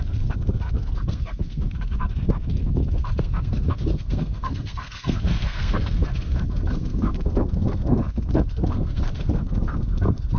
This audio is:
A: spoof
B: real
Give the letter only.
A